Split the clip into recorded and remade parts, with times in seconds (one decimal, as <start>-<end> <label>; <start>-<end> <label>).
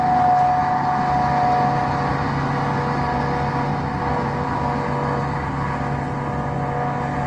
0.0-7.3 recorded